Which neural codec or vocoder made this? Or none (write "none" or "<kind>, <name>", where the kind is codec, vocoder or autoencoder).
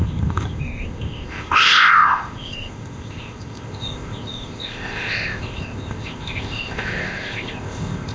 codec, ZipCodec